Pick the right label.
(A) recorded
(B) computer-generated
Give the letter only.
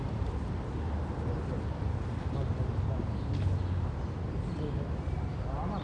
A